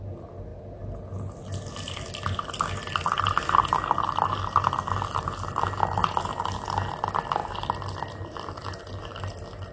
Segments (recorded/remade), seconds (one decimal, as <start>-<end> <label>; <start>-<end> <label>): 0.0-9.7 recorded